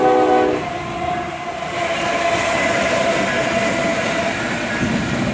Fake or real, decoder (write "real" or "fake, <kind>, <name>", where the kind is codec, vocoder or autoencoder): real